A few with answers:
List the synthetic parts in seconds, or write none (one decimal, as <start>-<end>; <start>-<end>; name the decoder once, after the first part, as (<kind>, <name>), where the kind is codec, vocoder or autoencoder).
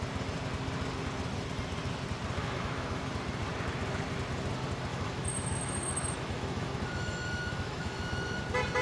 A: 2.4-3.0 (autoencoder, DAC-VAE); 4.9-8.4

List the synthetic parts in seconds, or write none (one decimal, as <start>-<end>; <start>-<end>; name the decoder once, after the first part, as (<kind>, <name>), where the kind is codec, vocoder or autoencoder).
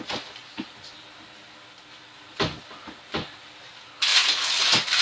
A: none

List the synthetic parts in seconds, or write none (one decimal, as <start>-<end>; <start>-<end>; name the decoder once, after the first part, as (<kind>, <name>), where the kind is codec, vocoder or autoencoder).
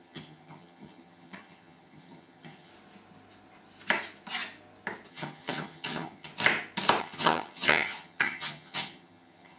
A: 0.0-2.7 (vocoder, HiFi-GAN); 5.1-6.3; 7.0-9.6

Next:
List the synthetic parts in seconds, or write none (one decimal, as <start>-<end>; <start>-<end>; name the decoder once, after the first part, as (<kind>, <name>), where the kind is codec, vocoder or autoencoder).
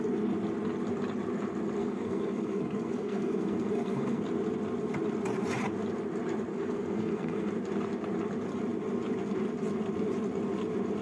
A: 1.8-4.2 (codec, SNAC); 6.5-7.5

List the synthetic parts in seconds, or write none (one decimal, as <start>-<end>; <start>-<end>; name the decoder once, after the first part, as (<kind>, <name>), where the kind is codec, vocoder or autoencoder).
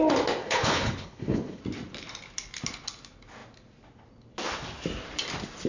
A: 0.4-1.6 (codec, HILCodec)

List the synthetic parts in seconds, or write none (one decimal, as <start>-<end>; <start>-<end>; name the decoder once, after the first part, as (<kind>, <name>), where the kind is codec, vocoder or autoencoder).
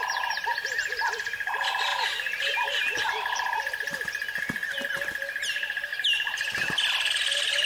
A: none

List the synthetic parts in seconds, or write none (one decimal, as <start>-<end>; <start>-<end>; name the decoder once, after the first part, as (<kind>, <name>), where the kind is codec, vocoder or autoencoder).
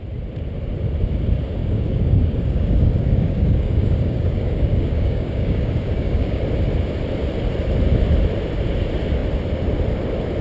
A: 1.6-6.4 (codec, DAC)